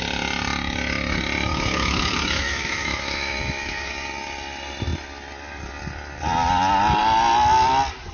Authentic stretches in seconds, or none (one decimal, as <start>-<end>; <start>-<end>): 0.0-1.5; 3.9-8.1